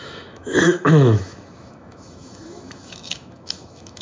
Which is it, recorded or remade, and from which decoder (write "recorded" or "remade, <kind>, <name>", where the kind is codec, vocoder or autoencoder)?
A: remade, autoencoder, DAC-VAE